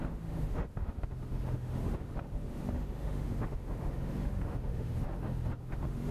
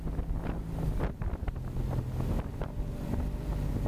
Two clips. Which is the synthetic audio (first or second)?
first